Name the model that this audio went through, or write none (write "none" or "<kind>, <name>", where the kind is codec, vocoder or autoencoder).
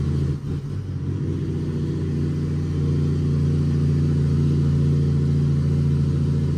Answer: none